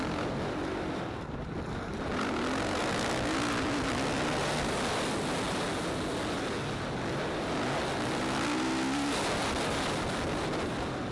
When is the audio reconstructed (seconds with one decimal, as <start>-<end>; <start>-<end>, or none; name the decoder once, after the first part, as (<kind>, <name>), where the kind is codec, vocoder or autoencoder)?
none